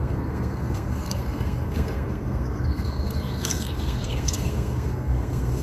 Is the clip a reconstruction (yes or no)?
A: yes